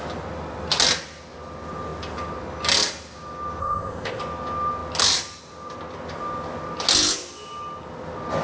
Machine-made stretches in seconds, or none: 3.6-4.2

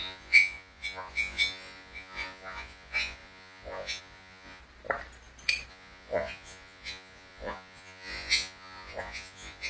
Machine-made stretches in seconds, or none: 0.0-4.6; 5.7-9.7

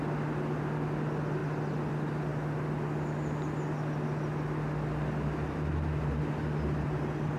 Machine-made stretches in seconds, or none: none

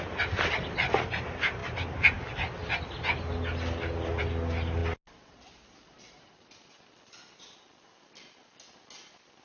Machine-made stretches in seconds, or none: none